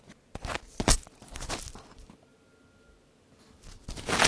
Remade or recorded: recorded